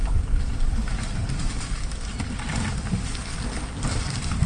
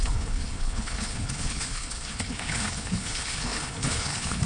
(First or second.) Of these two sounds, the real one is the first